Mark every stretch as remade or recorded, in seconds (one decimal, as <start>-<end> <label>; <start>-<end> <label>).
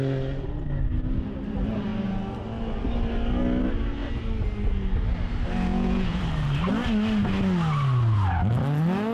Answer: 0.0-5.7 recorded; 5.7-6.2 remade; 6.2-9.1 recorded